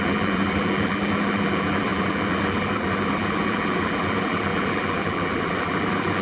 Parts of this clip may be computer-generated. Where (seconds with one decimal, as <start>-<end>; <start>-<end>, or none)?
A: 0.0-6.2